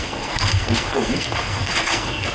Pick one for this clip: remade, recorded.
remade